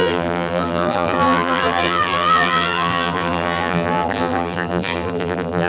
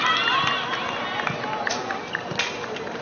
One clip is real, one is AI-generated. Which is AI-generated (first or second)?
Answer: first